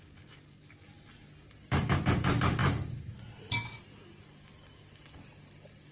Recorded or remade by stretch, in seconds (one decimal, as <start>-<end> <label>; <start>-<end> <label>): 0.0-5.9 recorded